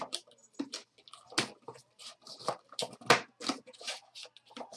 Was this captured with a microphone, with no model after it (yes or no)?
yes